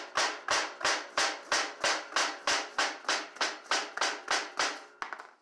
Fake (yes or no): no